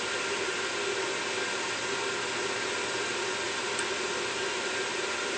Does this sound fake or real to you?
real